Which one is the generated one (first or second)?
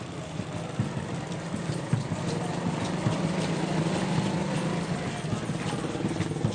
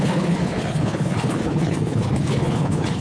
second